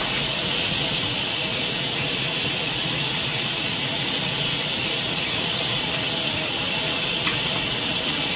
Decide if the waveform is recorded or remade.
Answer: remade